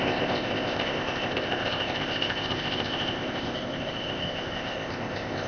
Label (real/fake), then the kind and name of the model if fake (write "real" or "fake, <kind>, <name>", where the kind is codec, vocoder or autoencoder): fake, codec, ZipCodec